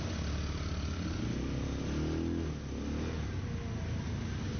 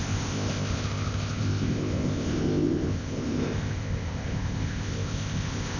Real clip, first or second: first